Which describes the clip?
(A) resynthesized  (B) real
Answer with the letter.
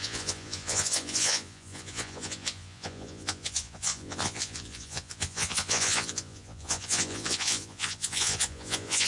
A